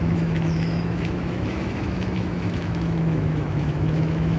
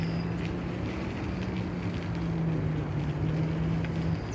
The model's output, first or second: first